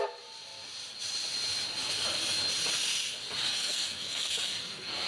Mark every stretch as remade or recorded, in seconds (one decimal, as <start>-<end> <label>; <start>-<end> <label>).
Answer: 0.0-3.5 recorded; 3.5-5.1 remade